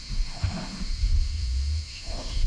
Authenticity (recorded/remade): remade